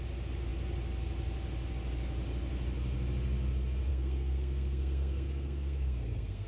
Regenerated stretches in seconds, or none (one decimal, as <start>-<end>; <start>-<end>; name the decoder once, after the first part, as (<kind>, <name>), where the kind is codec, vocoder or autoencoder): 3.9-6.5 (codec, SNAC)